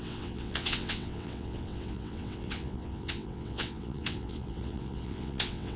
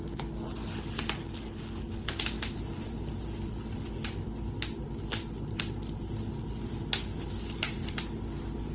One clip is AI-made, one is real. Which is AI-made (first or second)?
first